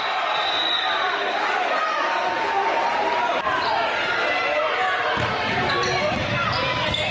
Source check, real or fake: real